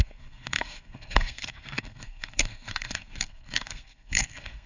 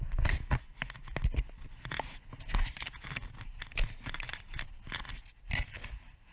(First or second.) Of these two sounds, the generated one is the first